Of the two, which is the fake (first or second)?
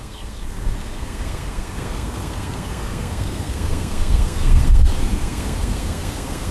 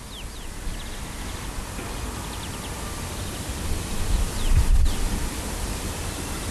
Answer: first